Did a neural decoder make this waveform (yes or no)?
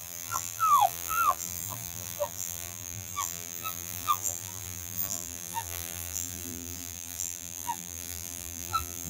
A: yes